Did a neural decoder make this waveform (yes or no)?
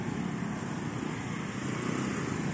no